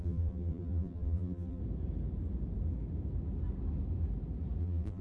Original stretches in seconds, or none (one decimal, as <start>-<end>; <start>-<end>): 1.6-4.6

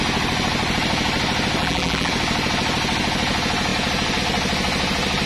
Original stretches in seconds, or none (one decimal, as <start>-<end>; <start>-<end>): 0.0-1.6; 2.1-5.3

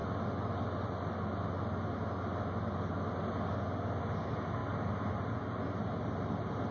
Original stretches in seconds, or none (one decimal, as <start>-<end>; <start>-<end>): 0.0-6.7

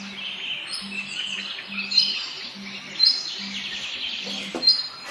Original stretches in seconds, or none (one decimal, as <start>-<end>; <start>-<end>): 0.0-5.1

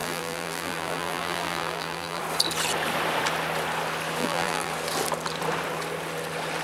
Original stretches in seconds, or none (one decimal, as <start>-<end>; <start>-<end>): 2.2-4.2; 4.7-6.6

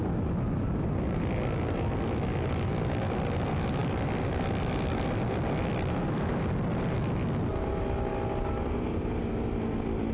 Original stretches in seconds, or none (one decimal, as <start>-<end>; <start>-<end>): 0.0-10.1